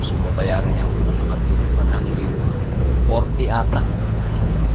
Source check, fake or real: fake